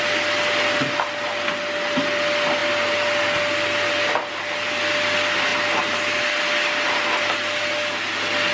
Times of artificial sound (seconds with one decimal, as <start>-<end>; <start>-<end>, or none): none

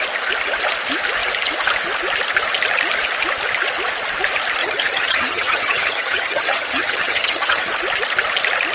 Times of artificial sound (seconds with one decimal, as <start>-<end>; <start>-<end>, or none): 4.6-7.7

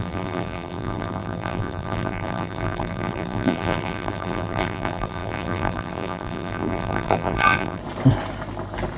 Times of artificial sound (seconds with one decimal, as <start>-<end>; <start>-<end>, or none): 0.0-7.8